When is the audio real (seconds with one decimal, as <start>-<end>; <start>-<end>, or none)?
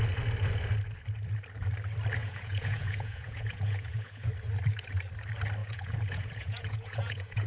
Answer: 0.0-2.2; 4.3-5.6